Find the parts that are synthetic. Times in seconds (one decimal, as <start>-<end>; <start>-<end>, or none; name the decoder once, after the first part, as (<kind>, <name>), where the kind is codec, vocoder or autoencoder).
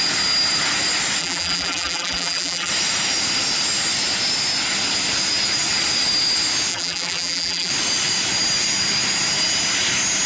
1.2-2.7 (vocoder, BigVGAN v2); 6.7-7.7